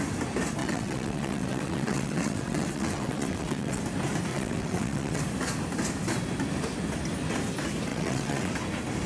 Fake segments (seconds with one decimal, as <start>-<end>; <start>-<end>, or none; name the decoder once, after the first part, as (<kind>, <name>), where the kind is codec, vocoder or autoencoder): 0.6-3.8 (vocoder, WaveNeXt); 4.3-5.2; 7.9-8.5